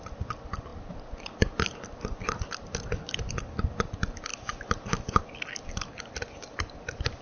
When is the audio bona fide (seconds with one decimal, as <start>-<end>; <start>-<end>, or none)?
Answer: 0.0-7.2